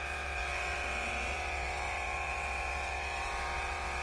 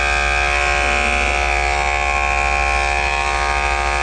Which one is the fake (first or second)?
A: first